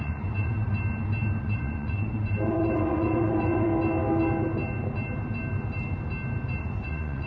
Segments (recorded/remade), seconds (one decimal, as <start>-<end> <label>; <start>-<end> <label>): 0.0-0.7 remade; 0.7-1.4 recorded; 1.4-3.7 remade; 3.7-6.6 recorded; 6.6-7.3 remade